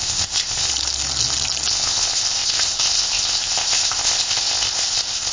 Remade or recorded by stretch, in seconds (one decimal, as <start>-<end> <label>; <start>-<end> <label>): 0.0-0.7 remade; 0.7-1.7 recorded; 1.7-5.3 remade